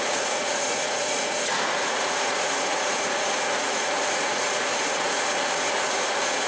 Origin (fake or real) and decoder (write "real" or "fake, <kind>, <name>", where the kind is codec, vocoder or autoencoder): fake, vocoder, Vocos